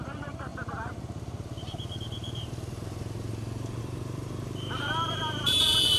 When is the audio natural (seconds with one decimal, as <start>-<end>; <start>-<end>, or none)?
0.5-3.8